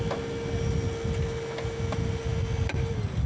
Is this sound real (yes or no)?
yes